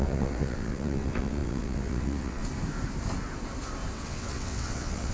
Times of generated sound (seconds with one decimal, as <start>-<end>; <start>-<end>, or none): 0.0-2.4; 3.9-5.1